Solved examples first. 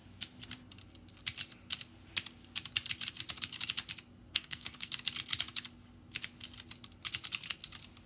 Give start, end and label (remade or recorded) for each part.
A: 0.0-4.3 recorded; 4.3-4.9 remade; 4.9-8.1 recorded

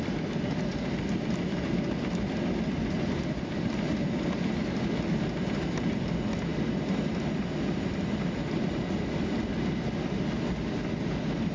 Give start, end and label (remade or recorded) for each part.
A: 0.0-11.5 recorded

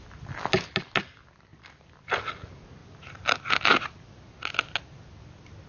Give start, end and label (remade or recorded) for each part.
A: 0.0-2.8 recorded; 2.8-3.4 remade; 3.4-5.7 recorded

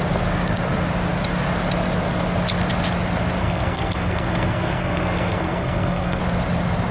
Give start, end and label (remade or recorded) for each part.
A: 0.0-3.4 recorded; 3.4-6.2 remade; 6.2-6.9 recorded

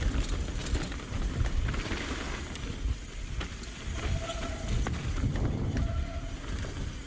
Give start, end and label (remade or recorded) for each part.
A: 0.0-7.1 recorded

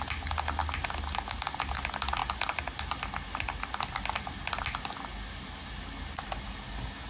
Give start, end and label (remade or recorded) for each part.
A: 0.0-7.1 recorded

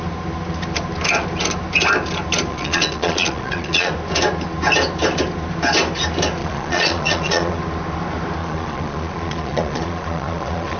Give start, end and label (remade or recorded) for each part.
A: 0.0-2.5 recorded; 2.5-3.9 remade; 3.9-6.4 recorded; 6.4-7.6 remade; 7.6-8.4 recorded; 8.4-10.8 remade

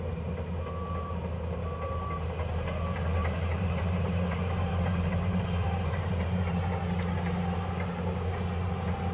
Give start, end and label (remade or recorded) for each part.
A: 0.0-3.2 recorded; 3.2-6.6 remade; 6.6-9.1 recorded